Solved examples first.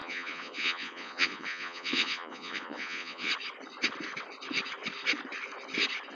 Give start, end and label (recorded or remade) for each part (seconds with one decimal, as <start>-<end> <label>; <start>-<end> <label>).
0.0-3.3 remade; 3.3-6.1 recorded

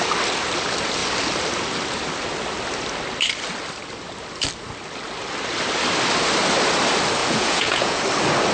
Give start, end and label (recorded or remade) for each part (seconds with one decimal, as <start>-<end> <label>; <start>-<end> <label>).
0.0-7.2 recorded; 7.2-8.0 remade; 8.0-8.5 recorded

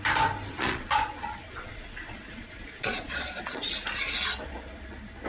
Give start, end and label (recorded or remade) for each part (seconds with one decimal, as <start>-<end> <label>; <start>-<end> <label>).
0.0-0.5 recorded; 0.5-3.7 remade; 3.7-5.3 recorded

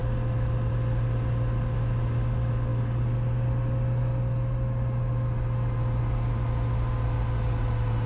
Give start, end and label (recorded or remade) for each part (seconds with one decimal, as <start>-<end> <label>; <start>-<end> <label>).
0.0-8.1 recorded